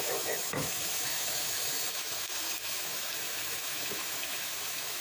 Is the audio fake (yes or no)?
yes